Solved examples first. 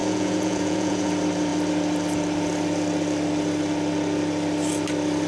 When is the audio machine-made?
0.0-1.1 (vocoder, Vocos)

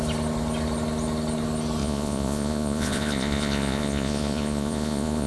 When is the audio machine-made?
1.8-5.3 (vocoder, Vocos)

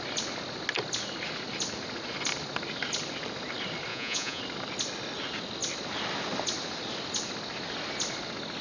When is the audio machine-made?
3.9-4.4 (vocoder, Vocos)

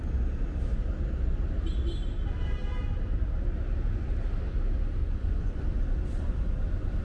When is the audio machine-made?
5.0-5.6 (vocoder, Vocos)

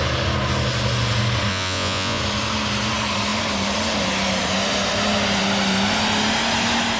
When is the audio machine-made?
1.5-2.2 (vocoder, Vocos)